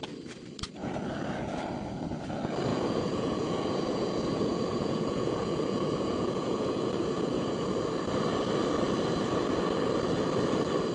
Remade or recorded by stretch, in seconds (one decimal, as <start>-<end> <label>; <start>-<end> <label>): 0.0-2.7 recorded; 2.7-7.7 remade; 7.7-10.9 recorded